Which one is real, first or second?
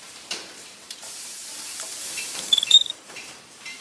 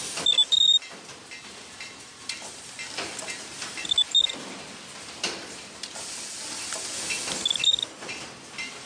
second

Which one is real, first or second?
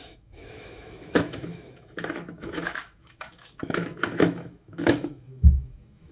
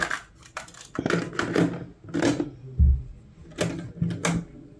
second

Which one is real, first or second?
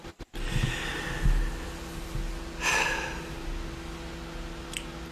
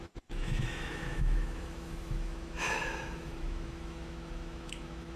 first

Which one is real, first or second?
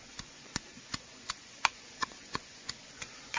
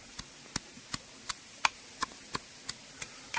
second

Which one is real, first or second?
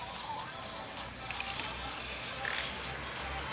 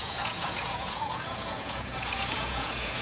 first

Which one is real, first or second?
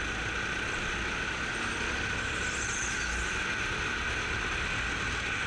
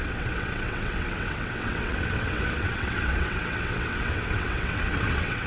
first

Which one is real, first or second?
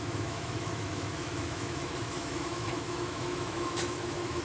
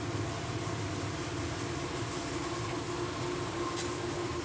second